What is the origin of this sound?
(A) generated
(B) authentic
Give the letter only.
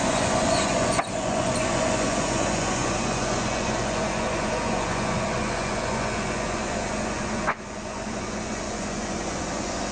A